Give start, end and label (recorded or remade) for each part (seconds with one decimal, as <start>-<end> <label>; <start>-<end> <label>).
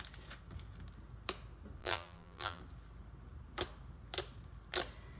0.0-1.8 recorded; 1.8-2.6 remade; 2.6-5.2 recorded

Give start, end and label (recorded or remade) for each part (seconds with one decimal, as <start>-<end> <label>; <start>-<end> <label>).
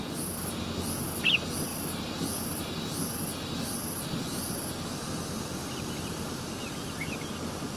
0.0-1.7 recorded; 1.7-4.7 remade; 4.7-5.6 recorded; 5.6-7.1 remade; 7.1-7.8 recorded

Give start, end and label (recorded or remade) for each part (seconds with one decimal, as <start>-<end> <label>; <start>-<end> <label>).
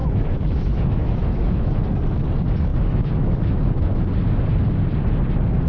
0.0-1.8 remade; 1.8-2.7 recorded; 2.7-4.0 remade; 4.0-5.7 recorded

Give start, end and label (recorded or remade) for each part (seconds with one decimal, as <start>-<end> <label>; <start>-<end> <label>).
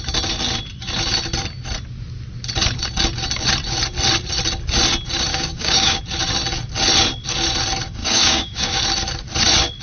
0.0-5.3 recorded; 5.3-6.0 remade; 6.0-8.0 recorded; 8.0-8.8 remade; 8.8-9.8 recorded